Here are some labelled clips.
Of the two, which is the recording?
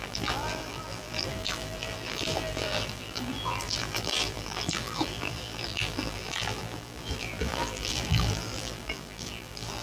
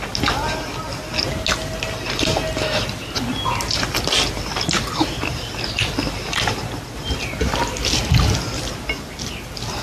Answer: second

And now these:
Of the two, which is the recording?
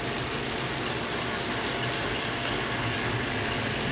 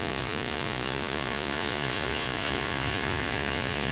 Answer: first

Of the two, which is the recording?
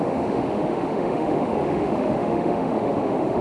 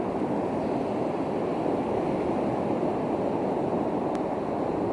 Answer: second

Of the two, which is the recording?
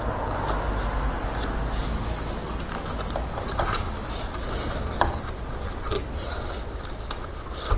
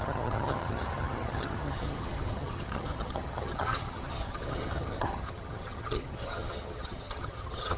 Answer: first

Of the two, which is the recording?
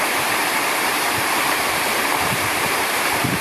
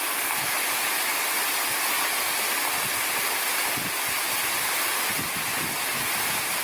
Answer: second